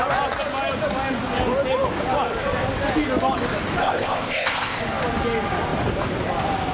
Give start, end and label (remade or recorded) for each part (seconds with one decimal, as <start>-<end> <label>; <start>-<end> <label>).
0.0-3.8 recorded; 3.8-4.8 remade; 4.8-6.7 recorded

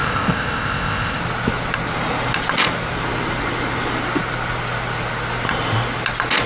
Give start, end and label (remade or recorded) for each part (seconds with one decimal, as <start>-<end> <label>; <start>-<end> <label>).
0.0-1.2 remade; 1.2-6.5 recorded

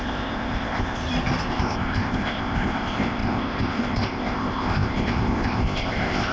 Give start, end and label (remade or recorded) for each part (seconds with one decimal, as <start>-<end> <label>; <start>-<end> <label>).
0.0-1.0 remade; 1.0-1.5 recorded; 1.5-6.3 remade

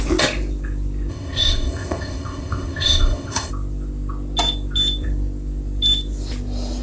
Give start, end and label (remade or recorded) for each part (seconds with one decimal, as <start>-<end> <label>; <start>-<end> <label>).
0.0-1.1 recorded; 1.1-3.5 remade; 3.5-6.8 recorded

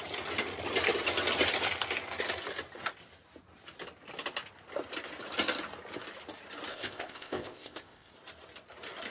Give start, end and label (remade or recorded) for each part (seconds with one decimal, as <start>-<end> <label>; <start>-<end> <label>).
0.0-6.7 recorded; 6.7-8.1 remade; 8.1-9.1 recorded